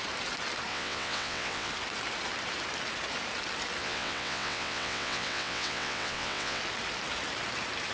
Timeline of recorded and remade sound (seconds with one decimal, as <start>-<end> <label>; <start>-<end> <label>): 0.0-0.7 recorded; 0.7-1.7 remade; 1.7-3.8 recorded; 3.8-6.6 remade; 6.6-7.9 recorded